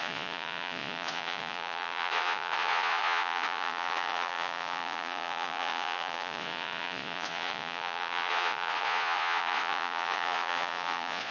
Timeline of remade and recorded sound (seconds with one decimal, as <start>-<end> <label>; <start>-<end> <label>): 0.0-11.3 remade